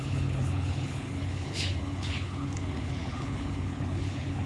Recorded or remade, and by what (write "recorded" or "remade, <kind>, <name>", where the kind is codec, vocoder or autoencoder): remade, codec, HILCodec